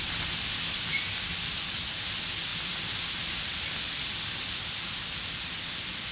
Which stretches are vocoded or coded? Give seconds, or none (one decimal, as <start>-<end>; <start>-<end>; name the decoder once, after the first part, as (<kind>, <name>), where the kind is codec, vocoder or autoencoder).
none